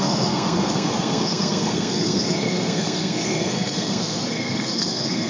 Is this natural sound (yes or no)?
no